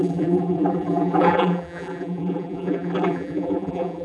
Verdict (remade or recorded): remade